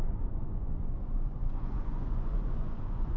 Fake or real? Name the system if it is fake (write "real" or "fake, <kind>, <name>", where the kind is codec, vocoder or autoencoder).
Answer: fake, vocoder, Vocos